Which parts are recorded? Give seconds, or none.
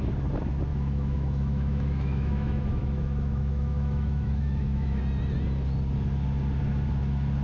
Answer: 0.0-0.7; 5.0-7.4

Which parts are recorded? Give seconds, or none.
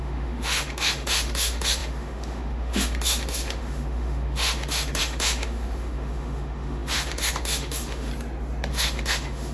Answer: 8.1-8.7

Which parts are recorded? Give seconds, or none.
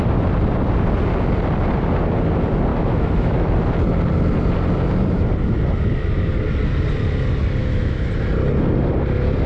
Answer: 0.0-2.7; 3.5-7.6; 8.1-9.5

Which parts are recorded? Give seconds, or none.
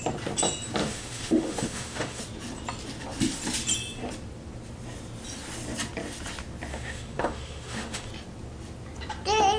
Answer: 0.0-0.8; 2.2-6.7; 8.1-9.6